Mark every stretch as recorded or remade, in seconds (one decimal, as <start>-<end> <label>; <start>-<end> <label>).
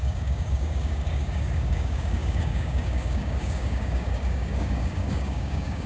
0.0-5.9 remade